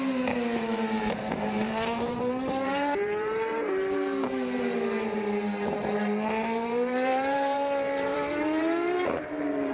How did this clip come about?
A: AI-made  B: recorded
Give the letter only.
A